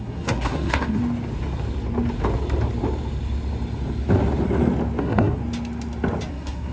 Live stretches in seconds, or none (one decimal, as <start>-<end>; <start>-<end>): 1.0-5.0; 5.4-6.3